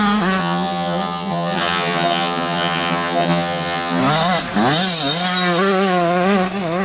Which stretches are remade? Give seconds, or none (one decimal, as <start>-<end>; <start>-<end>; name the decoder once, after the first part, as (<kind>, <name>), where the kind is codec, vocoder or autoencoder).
0.4-4.0 (vocoder, HiFi-GAN)